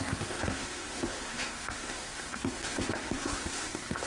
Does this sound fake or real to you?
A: fake